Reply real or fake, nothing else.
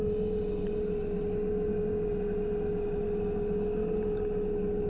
real